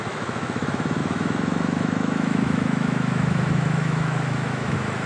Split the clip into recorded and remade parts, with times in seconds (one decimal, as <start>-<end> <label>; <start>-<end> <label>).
0.0-5.1 remade